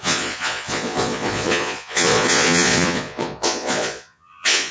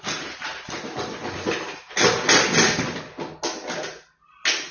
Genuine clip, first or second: second